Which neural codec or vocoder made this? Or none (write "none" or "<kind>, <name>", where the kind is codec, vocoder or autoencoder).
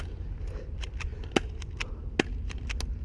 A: none